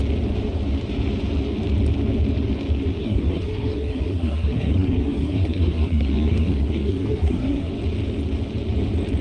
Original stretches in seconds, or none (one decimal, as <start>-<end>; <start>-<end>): 0.0-3.0; 7.7-9.2